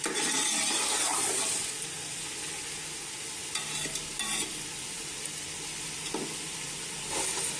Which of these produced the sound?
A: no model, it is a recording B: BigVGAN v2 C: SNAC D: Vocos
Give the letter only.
A